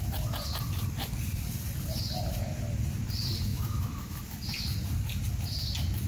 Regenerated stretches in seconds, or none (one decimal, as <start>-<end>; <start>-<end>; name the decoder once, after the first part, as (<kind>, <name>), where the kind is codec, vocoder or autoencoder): 3.5-4.2 (autoencoder, DAC-VAE)